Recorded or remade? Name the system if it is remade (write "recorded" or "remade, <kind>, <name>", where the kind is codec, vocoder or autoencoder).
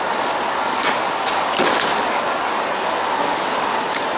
recorded